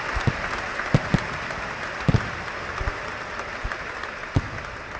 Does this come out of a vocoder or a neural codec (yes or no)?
no